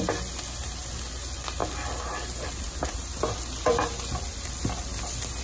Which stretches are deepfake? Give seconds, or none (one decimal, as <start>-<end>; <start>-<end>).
none